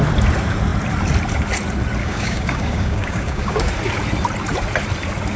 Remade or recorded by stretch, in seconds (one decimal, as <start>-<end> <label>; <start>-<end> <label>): 0.0-2.0 recorded; 2.0-3.7 remade; 3.7-5.4 recorded